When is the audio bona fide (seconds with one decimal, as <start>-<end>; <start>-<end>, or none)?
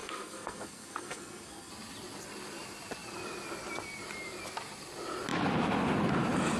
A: 1.7-6.6